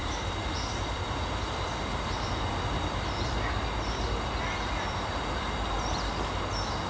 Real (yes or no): yes